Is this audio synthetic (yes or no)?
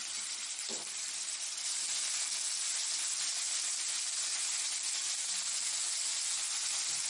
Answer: no